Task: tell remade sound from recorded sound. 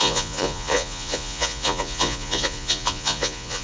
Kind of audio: remade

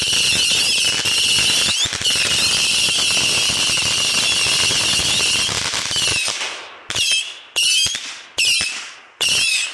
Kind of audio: recorded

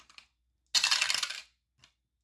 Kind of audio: recorded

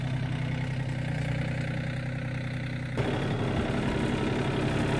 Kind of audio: recorded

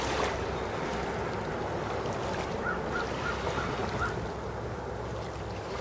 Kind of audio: recorded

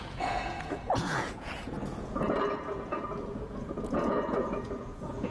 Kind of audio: remade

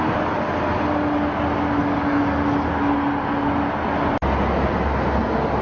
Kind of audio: recorded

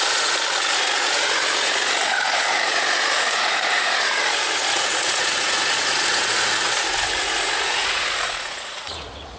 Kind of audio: remade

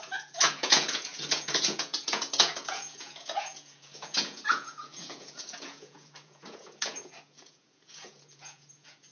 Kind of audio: remade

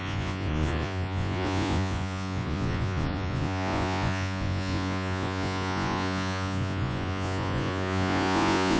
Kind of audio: remade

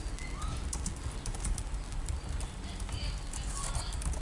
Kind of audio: recorded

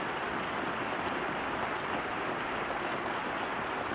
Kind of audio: recorded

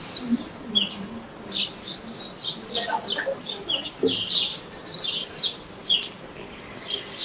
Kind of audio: recorded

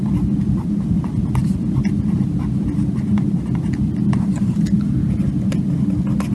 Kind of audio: recorded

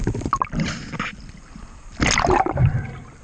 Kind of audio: recorded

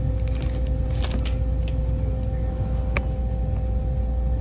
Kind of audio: recorded